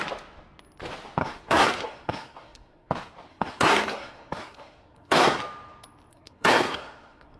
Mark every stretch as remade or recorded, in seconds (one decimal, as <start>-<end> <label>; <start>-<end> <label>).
0.0-1.2 recorded; 1.2-2.9 remade; 2.9-3.3 recorded; 3.3-5.4 remade; 5.4-6.1 recorded; 6.1-7.4 remade